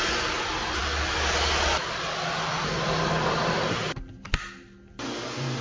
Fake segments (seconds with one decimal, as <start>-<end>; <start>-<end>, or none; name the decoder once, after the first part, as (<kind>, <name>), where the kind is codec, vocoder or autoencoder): none